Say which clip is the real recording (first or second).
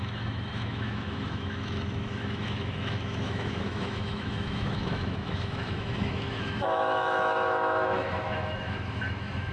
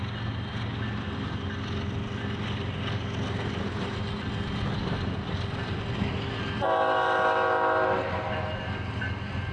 second